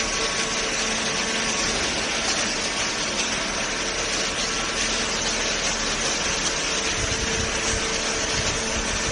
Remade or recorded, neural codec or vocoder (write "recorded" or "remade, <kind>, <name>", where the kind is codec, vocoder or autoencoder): recorded